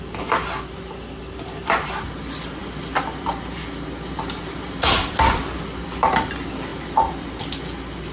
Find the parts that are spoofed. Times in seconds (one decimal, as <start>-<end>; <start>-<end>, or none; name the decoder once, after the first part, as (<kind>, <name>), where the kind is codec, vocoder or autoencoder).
none